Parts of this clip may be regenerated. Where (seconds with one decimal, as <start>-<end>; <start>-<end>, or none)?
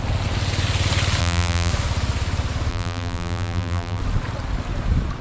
1.2-1.7; 2.7-4.0